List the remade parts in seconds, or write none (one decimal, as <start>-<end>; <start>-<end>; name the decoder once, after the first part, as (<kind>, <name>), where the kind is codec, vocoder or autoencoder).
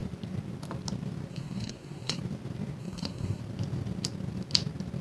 1.3-2.2 (codec, SNAC); 2.8-3.4